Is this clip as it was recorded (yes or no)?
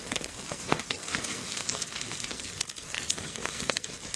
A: no